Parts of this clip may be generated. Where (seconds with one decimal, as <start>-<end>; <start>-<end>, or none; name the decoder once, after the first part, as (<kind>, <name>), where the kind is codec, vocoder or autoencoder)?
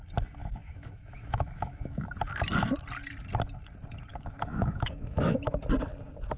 0.4-2.1 (autoencoder, DAC-VAE); 4.1-5.6